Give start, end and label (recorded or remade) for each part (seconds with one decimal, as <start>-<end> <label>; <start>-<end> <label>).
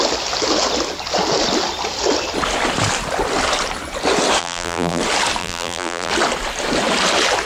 0.0-4.4 recorded; 4.4-5.0 remade; 5.0-5.4 recorded; 5.4-6.1 remade; 6.1-7.5 recorded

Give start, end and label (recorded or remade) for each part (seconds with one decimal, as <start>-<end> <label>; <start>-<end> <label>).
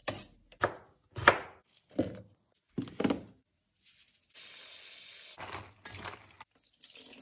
0.0-7.2 recorded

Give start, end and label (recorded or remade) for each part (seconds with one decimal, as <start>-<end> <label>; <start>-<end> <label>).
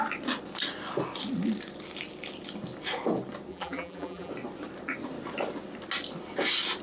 0.0-3.5 recorded; 3.5-4.3 remade; 4.3-6.8 recorded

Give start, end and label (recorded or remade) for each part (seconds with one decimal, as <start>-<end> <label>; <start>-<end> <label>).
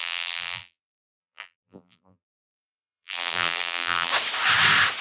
0.0-4.1 remade; 4.1-5.0 recorded